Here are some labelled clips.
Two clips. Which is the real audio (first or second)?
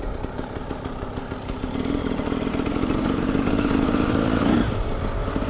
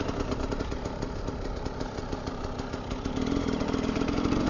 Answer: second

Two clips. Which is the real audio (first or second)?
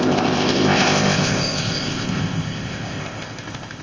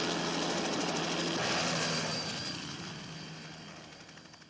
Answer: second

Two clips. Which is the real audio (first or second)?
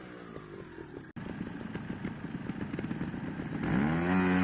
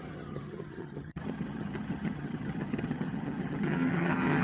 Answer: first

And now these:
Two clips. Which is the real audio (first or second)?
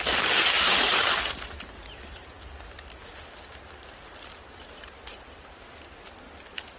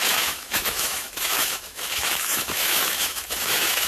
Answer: first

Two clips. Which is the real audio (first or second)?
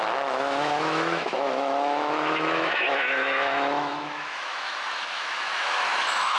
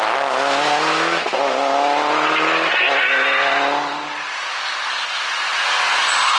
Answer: second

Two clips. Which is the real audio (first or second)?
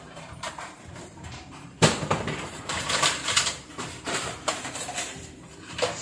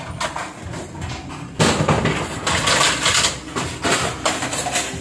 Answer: second